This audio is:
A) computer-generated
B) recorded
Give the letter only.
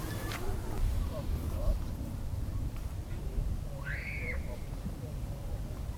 A